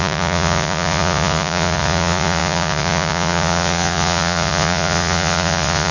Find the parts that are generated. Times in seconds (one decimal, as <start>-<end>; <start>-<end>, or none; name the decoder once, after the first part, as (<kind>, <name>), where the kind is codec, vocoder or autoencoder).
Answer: 0.0-5.9 (vocoder, Vocos)